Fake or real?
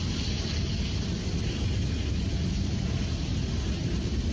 real